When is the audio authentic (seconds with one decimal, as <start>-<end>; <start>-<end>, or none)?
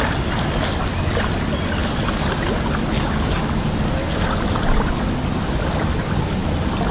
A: 0.0-6.9